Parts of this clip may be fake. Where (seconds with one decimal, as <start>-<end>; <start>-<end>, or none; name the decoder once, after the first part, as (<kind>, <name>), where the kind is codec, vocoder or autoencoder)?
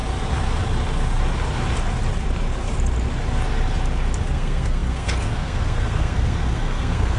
4.3-7.2 (codec, SNAC)